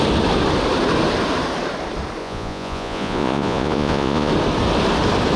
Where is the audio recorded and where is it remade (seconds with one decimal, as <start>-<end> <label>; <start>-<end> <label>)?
0.0-2.2 recorded; 2.2-4.3 remade; 4.3-5.4 recorded